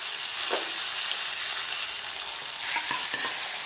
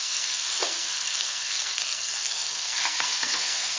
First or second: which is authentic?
first